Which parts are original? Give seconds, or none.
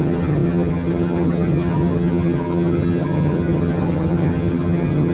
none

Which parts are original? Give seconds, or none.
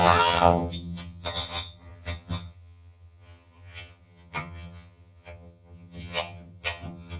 none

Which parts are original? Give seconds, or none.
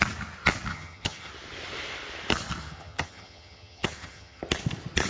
0.0-0.7; 1.3-2.6; 4.4-5.1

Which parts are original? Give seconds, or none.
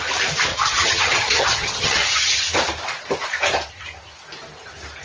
0.0-0.5; 2.4-5.0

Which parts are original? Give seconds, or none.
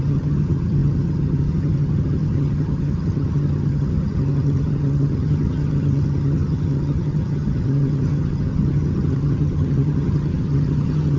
none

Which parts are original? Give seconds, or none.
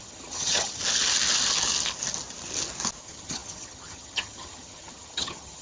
0.8-3.0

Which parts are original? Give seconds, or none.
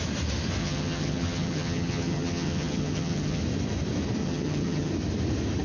0.0-0.6; 3.4-4.2; 4.9-5.6